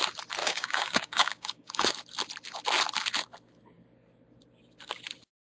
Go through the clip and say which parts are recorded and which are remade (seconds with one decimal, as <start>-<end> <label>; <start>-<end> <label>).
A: 0.0-0.4 recorded; 0.4-2.0 remade; 2.0-5.5 recorded